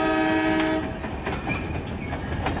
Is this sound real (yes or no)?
yes